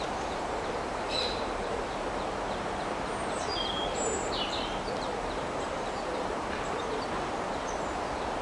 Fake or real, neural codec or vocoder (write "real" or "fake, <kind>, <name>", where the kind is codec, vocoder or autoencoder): fake, vocoder, BigVGAN v2